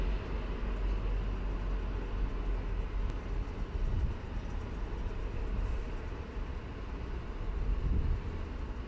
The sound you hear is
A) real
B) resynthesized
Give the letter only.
A